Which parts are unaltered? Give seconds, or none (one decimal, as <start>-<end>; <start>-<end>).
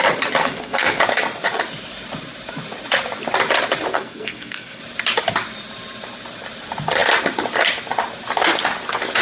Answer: 0.0-0.4; 1.0-3.9; 4.8-9.2